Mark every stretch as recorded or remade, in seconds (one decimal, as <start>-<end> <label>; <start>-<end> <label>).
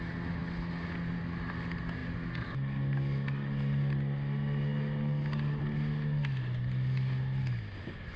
0.0-8.2 recorded